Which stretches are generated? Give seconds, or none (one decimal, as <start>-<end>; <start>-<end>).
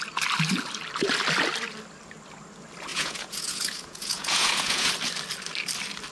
2.9-4.9